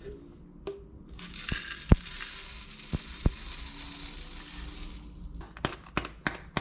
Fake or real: real